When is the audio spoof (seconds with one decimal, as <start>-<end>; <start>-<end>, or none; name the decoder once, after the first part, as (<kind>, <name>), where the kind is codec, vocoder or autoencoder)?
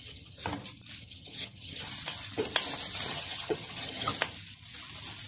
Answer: 0.0-0.4 (vocoder, HiFi-GAN); 1.0-1.9; 3.1-4.1